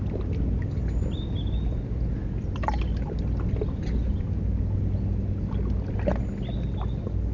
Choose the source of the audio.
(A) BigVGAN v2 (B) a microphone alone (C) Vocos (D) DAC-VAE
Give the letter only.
B